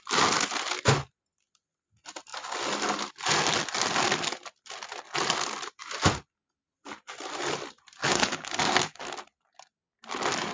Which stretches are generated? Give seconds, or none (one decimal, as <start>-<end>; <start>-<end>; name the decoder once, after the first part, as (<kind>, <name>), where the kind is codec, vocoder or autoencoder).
8.0-9.0 (codec, DAC)